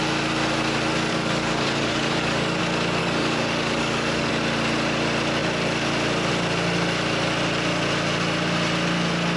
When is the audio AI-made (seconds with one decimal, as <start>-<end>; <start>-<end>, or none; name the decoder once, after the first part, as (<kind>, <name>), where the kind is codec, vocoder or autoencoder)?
1.1-2.6 (codec, DAC); 3.0-4.3